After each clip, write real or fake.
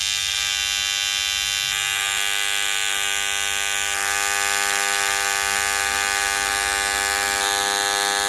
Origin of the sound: real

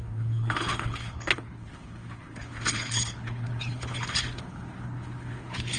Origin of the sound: fake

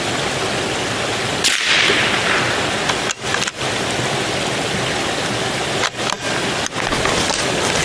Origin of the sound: real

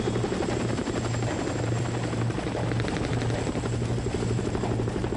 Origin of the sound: real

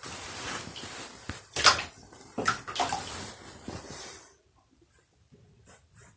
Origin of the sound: real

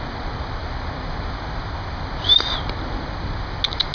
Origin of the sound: real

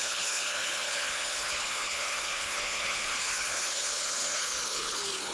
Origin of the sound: fake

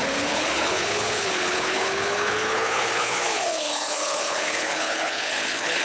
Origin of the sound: fake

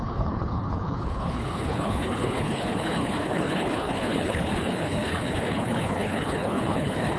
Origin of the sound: fake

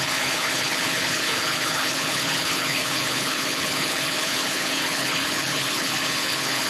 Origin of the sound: fake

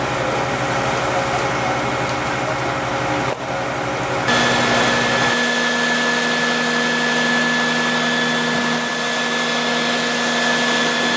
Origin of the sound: real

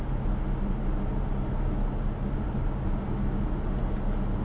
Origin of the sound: real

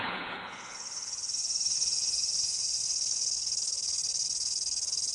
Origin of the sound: fake